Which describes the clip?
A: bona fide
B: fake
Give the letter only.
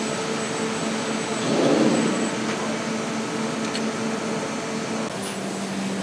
A